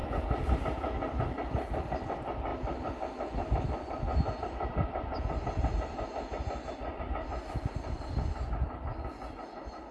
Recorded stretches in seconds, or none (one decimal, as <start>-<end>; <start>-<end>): 0.6-9.9

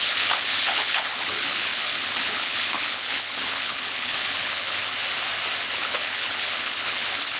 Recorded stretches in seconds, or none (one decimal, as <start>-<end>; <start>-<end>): 4.8-5.7